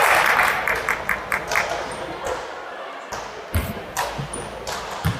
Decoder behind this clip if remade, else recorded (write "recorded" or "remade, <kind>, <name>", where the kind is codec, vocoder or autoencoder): recorded